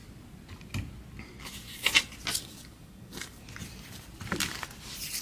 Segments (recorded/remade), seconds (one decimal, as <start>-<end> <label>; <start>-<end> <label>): 0.0-2.4 recorded; 2.4-3.4 remade; 3.4-5.2 recorded

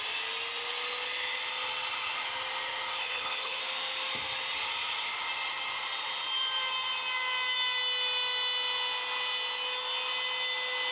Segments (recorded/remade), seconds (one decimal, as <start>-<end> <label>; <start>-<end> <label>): 0.0-3.0 recorded; 3.0-3.6 remade; 3.6-10.9 recorded

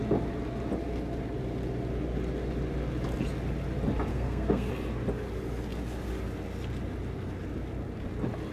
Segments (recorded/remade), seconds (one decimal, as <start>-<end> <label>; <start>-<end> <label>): 0.0-4.1 recorded; 4.1-4.7 remade; 4.7-8.5 recorded

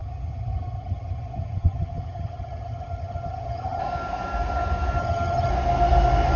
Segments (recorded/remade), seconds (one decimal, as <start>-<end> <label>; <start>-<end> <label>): 0.0-3.8 remade; 3.8-5.0 recorded; 5.0-5.5 remade; 5.5-6.4 recorded

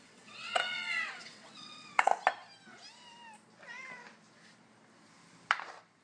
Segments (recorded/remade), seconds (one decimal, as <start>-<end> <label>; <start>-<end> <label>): 0.0-2.1 remade; 2.1-6.0 recorded

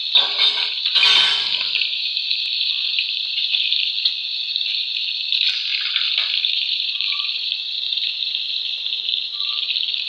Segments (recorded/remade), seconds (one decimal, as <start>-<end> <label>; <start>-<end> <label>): 0.0-2.9 recorded; 2.9-3.7 remade; 3.7-5.7 recorded; 5.7-8.9 remade; 8.9-10.1 recorded

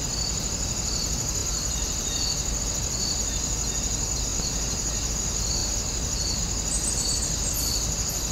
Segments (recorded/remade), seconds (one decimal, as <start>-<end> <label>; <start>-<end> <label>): 0.0-5.6 recorded; 5.6-6.4 remade; 6.4-8.3 recorded